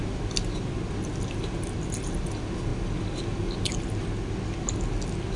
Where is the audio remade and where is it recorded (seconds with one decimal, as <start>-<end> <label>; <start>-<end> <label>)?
0.0-5.4 recorded